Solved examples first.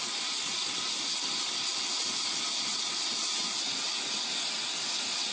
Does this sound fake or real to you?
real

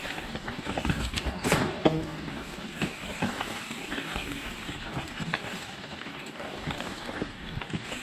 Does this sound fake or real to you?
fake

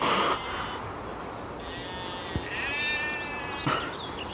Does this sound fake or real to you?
real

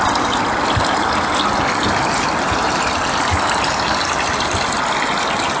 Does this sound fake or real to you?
real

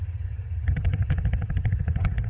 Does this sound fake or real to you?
fake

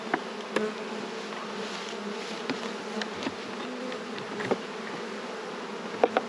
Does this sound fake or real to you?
real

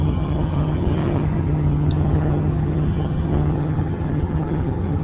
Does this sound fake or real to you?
fake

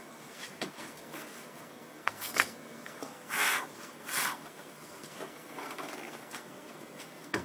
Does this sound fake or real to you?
fake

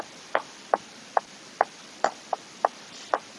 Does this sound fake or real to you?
real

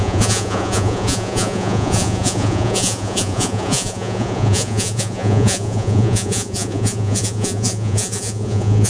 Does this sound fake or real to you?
fake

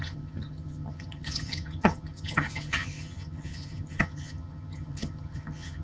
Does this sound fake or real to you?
fake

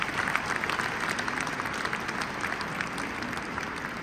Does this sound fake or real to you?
real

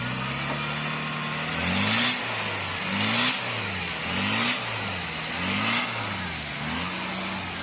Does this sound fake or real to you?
real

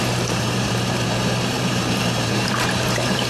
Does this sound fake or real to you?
fake